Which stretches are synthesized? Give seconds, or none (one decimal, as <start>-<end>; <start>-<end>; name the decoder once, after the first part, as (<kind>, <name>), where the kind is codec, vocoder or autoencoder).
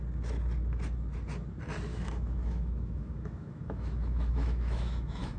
1.9-5.4 (autoencoder, DAC-VAE)